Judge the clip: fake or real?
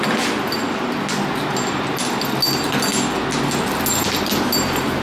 real